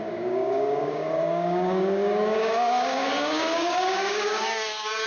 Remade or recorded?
remade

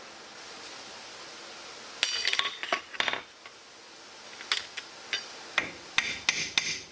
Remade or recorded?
recorded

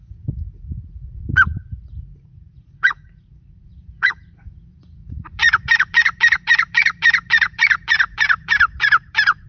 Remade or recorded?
remade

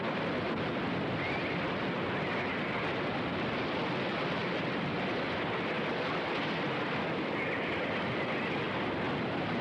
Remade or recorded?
recorded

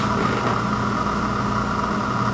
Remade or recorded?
recorded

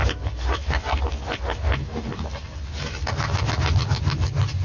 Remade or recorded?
recorded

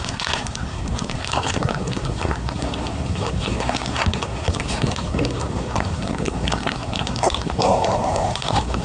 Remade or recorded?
remade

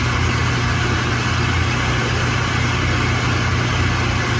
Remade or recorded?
recorded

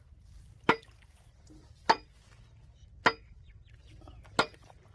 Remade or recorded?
recorded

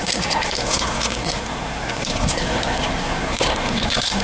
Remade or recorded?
remade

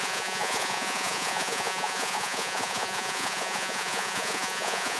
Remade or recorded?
remade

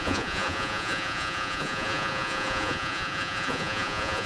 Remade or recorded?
remade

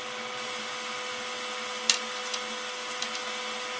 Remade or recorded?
recorded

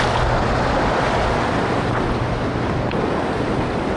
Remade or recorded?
recorded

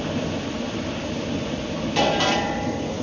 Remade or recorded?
remade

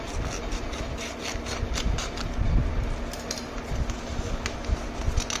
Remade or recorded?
recorded